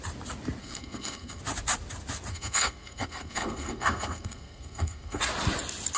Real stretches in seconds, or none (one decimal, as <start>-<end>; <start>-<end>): 0.0-0.6; 1.4-2.3; 5.2-6.0